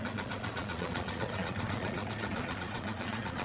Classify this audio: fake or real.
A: fake